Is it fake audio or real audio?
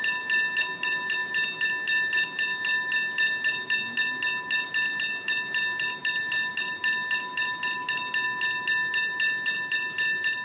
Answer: real